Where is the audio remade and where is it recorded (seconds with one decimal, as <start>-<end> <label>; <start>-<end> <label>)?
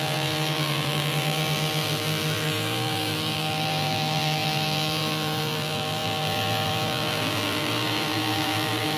0.0-9.0 remade